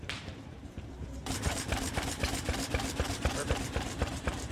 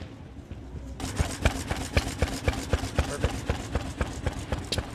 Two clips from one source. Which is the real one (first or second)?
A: second